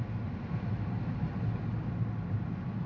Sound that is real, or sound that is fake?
real